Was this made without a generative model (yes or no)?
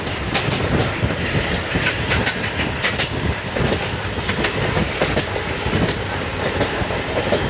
yes